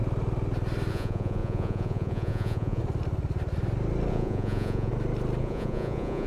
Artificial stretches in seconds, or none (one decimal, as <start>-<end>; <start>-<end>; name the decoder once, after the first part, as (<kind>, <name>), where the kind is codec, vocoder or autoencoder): 0.9-2.8 (vocoder, Vocos); 4.1-4.9; 5.4-6.3